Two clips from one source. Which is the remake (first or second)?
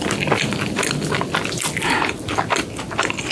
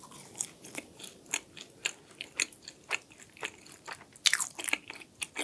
first